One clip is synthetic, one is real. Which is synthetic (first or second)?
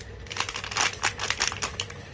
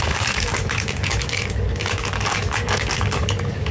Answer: second